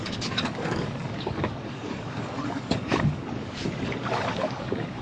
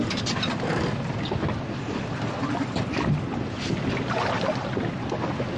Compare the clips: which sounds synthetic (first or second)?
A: first